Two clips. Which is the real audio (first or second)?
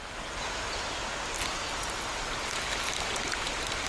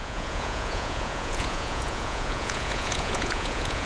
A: first